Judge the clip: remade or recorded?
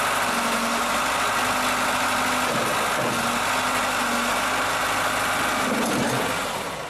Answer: recorded